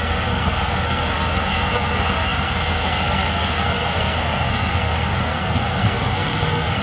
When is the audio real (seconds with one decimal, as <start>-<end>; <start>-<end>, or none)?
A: none